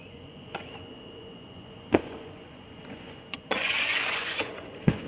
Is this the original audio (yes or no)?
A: no